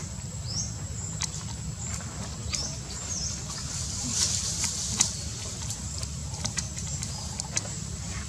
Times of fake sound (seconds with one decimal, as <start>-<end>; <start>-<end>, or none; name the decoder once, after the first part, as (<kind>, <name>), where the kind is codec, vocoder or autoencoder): 0.0-0.6 (vocoder, BigVGAN v2); 2.4-4.3

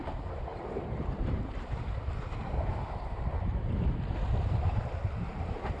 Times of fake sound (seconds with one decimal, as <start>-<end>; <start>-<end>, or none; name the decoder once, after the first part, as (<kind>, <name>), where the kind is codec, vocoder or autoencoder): 0.5-4.0 (vocoder, BigVGAN v2)